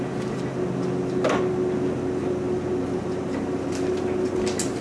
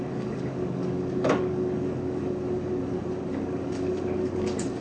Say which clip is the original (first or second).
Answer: first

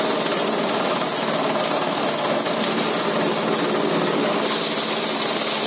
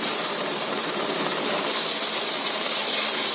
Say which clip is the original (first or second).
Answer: first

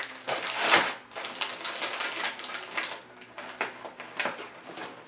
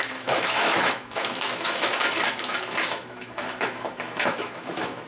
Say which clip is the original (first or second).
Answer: first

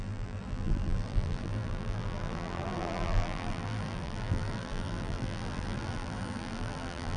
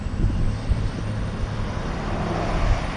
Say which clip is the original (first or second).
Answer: second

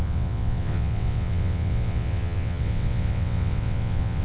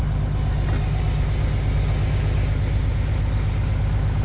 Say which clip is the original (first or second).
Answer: second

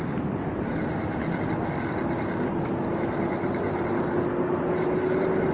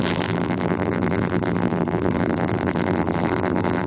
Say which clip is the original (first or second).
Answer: first